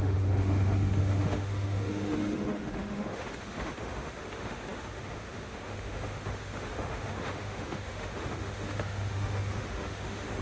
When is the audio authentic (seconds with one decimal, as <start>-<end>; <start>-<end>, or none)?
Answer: none